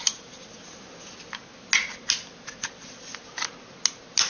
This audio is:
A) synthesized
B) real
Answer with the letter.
B